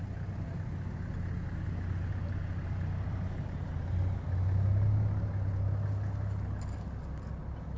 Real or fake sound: real